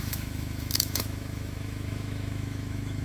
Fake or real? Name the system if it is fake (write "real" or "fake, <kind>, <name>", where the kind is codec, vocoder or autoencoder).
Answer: fake, autoencoder, DAC-VAE